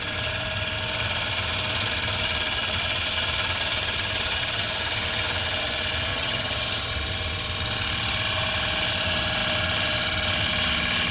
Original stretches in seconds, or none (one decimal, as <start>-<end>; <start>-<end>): 0.0-6.1; 6.9-11.1